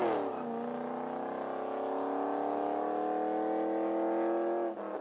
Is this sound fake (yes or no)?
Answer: no